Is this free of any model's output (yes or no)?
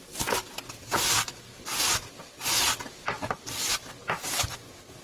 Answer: yes